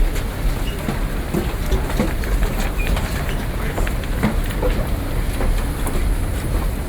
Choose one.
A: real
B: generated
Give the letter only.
A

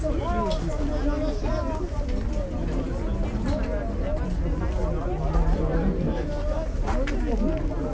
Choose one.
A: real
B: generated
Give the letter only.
A